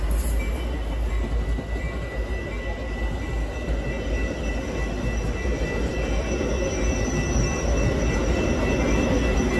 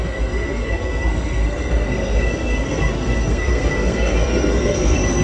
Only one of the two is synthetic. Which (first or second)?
second